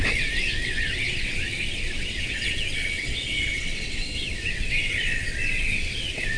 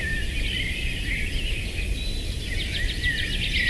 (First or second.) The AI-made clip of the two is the first